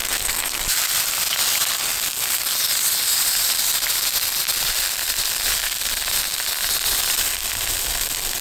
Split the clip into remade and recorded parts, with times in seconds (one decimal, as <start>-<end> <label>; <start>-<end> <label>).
0.0-0.6 remade; 0.6-8.4 recorded